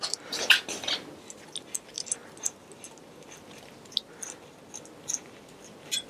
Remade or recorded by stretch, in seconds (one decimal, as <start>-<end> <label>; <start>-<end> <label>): 0.0-6.1 recorded